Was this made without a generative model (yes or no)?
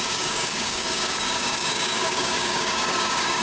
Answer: no